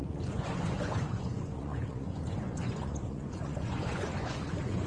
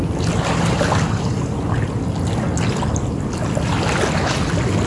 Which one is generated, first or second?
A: first